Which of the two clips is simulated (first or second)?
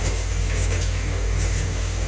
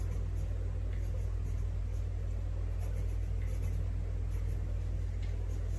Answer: first